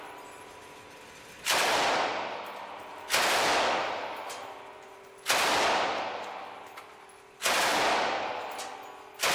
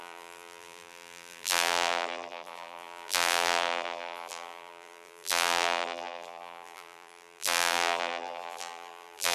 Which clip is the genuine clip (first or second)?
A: first